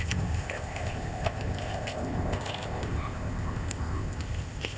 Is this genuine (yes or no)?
no